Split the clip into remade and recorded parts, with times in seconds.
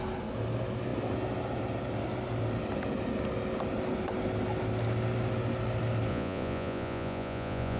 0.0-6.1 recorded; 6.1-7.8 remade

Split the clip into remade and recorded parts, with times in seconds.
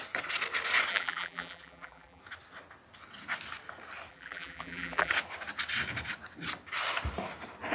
0.0-0.9 recorded; 0.9-2.2 remade; 2.2-4.1 recorded; 4.1-5.1 remade; 5.1-7.7 recorded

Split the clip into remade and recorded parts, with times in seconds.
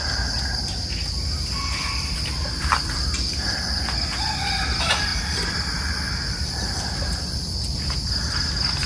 0.0-8.9 recorded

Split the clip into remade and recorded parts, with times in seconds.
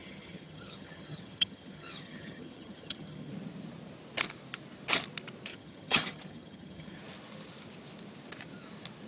0.0-3.3 remade; 3.3-5.5 recorded; 5.5-7.0 remade; 7.0-9.1 recorded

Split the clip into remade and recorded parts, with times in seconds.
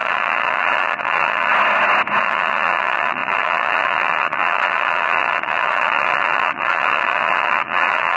0.0-1.5 remade; 1.5-2.2 recorded; 2.2-8.2 remade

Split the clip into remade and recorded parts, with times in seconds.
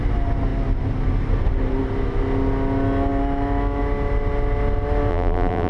0.0-5.1 recorded; 5.1-5.7 remade